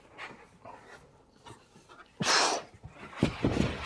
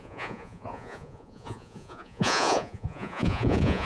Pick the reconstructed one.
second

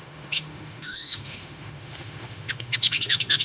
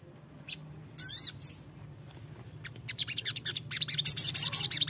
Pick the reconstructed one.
first